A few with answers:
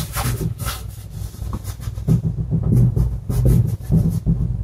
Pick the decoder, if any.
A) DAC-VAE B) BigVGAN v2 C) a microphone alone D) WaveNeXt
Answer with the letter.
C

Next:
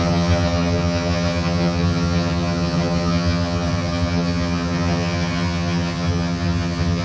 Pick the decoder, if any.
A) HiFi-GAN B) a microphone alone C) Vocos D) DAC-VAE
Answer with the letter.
A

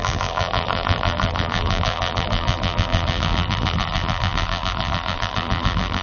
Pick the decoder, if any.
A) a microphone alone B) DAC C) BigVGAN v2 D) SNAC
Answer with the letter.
C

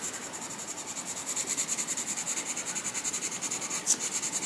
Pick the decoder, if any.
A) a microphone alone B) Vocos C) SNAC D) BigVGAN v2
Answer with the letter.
A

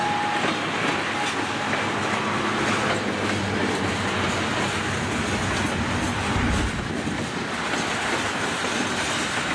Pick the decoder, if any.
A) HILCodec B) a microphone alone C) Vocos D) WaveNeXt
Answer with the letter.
B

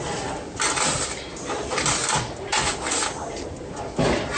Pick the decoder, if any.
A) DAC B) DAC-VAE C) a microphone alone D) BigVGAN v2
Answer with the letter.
C